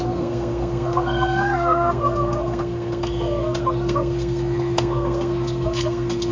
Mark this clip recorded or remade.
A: remade